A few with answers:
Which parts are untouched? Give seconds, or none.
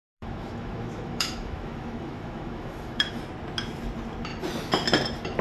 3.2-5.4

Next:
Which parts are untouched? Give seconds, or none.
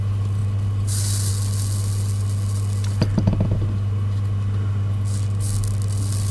0.0-6.3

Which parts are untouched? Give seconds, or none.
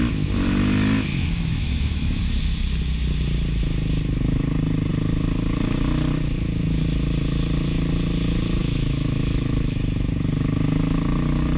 0.0-1.1; 2.2-8.6; 10.1-11.6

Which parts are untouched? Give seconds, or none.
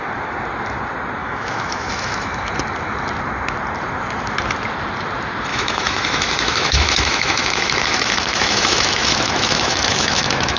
0.0-1.2; 2.5-5.5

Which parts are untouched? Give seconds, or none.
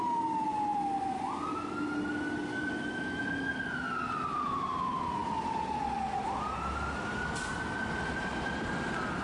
0.0-2.5; 3.5-9.2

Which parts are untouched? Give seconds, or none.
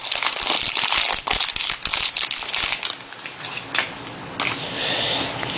0.0-5.6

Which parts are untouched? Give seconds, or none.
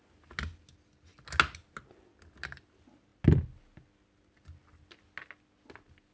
0.0-6.1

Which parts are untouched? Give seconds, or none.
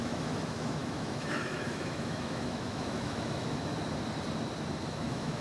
3.7-4.9